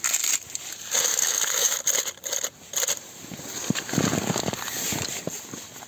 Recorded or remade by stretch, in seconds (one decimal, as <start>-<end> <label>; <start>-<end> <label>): 0.0-1.1 recorded; 1.1-1.8 remade; 1.8-5.9 recorded

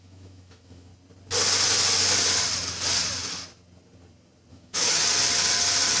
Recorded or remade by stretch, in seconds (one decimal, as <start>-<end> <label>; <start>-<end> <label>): 0.0-0.9 remade; 0.9-4.5 recorded; 4.5-5.0 remade; 5.0-6.0 recorded